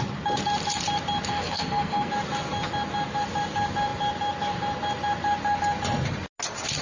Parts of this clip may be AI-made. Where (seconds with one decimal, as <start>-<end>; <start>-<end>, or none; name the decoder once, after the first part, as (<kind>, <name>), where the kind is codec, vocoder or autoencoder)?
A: 1.3-2.1 (codec, SNAC)